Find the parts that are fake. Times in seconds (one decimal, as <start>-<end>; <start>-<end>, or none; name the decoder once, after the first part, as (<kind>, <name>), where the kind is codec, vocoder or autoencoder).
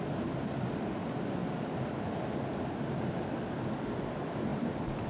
4.5-5.1 (vocoder, BigVGAN v2)